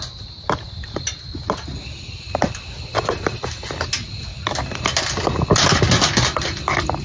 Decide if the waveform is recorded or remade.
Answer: recorded